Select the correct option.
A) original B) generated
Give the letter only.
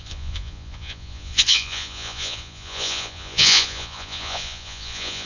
B